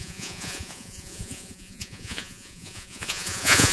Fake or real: fake